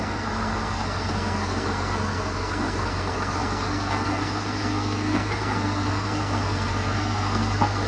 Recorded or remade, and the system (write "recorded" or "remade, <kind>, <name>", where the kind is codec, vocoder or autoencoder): remade, codec, SNAC